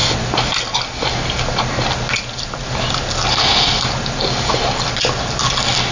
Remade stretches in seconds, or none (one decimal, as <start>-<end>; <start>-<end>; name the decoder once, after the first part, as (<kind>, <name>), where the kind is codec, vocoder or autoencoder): none